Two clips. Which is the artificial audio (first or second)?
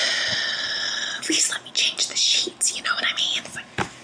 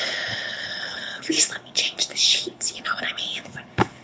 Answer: second